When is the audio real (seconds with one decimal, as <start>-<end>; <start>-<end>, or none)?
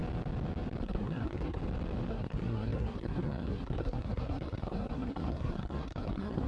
0.0-0.8; 1.6-2.1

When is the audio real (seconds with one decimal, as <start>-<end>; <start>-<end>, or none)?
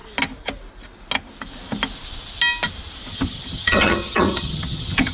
0.0-3.1